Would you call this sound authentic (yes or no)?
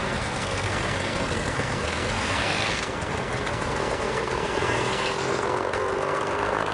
no